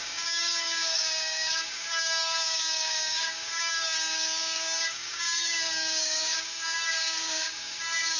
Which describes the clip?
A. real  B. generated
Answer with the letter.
B